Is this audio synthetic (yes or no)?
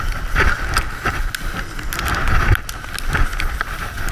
no